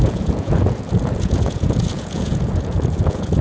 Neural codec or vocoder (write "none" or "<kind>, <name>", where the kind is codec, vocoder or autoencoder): vocoder, Vocos